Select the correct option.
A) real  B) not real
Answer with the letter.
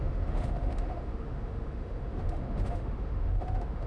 B